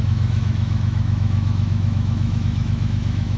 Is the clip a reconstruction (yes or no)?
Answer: yes